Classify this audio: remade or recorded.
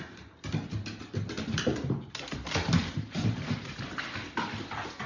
recorded